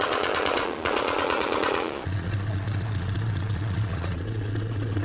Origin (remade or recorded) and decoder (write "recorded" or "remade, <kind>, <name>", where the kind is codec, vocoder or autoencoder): remade, vocoder, Vocos